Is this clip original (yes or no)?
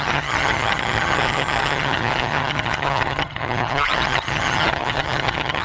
no